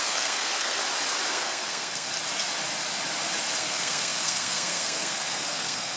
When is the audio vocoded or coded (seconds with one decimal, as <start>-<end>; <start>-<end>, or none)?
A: 0.0-0.8; 1.3-2.1; 3.6-6.0